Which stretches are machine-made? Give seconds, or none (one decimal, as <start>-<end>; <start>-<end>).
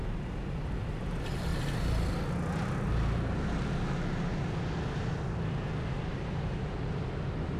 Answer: 0.0-1.5; 6.1-7.6